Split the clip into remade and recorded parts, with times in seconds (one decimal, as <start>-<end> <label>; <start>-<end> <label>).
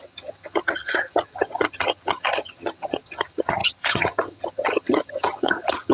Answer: 0.0-5.9 remade